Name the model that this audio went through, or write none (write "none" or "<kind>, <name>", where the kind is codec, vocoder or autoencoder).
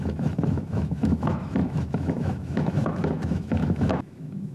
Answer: autoencoder, DAC-VAE